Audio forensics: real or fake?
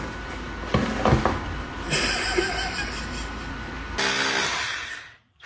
real